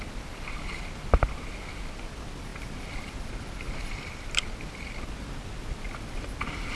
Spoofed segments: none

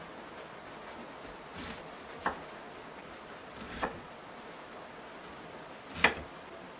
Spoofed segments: 3.4-4.1 (vocoder, Vocos)

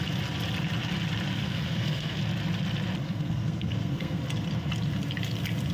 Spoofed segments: 1.4-2.2 (codec, SNAC); 3.0-4.2

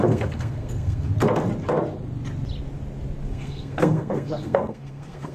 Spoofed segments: 0.0-1.1 (codec, SNAC); 3.3-5.3